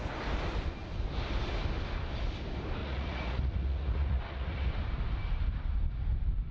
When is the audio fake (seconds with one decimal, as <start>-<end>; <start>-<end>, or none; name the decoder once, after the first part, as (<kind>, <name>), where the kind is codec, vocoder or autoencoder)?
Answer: 2.8-4.7 (vocoder, Vocos)